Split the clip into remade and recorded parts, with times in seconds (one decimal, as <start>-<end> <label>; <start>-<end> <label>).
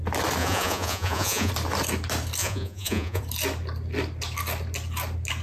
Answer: 0.0-0.4 recorded; 0.4-1.5 remade; 1.5-2.4 recorded; 2.4-3.2 remade; 3.2-5.4 recorded